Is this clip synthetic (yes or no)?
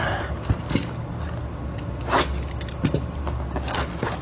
no